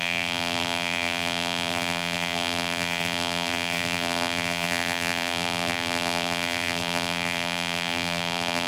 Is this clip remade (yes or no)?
yes